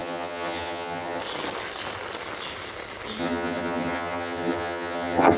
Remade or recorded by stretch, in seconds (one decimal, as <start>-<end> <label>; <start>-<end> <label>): 0.0-1.2 remade; 1.2-3.2 recorded; 3.2-5.4 remade